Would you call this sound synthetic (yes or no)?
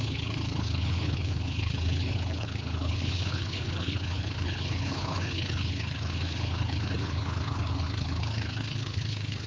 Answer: yes